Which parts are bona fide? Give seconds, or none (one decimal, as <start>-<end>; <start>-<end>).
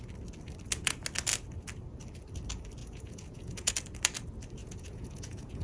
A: 0.0-2.8; 3.7-4.6